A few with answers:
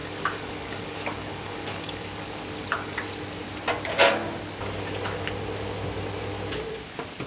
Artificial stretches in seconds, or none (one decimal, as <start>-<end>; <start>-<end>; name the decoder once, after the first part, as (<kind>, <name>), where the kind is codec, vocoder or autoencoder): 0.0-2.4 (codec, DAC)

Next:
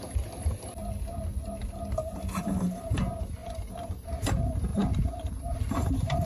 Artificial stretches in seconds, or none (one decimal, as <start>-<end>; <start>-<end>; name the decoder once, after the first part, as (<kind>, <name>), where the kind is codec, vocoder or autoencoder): 3.4-4.1 (vocoder, BigVGAN v2); 4.7-6.3

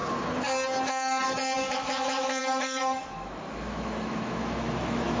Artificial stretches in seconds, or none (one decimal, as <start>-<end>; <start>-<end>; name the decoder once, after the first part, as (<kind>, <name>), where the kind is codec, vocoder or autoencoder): 0.9-5.2 (autoencoder, DAC-VAE)

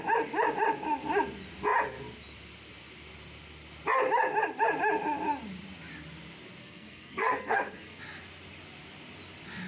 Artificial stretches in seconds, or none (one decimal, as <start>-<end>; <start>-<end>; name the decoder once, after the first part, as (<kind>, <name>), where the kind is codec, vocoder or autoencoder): 6.6-8.0 (codec, SNAC)

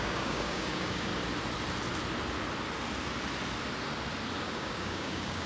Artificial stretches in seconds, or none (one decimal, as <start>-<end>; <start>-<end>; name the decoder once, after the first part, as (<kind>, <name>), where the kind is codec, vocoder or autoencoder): 0.0-1.1 (codec, DAC); 4.4-5.5

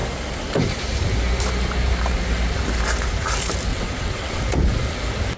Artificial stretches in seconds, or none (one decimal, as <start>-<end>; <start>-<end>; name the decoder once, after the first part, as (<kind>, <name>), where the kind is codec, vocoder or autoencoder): 3.7-4.4 (vocoder, WaveNeXt)

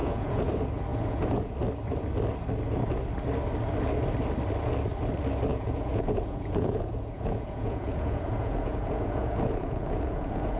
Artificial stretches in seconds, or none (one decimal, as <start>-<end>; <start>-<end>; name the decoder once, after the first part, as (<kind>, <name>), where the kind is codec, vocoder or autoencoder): 0.0-0.5 (vocoder, Vocos); 0.9-1.5; 5.5-10.6

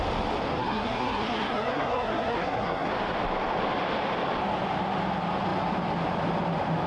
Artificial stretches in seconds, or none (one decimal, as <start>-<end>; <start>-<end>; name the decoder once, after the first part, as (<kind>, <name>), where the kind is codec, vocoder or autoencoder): 0.6-2.9 (codec, SNAC)